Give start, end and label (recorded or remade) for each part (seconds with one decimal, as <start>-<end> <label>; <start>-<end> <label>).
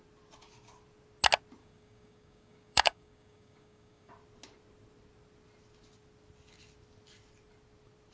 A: 0.0-1.6 recorded; 1.6-4.1 remade; 4.1-8.1 recorded